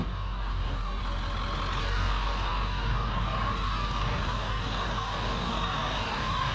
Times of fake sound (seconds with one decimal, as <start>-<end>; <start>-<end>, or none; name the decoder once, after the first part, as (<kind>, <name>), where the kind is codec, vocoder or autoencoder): 0.0-1.0 (codec, DAC); 1.8-6.5